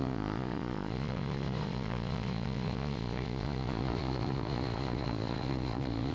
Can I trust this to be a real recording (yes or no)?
no